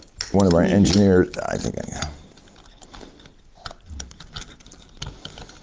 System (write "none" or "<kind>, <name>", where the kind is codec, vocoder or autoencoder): none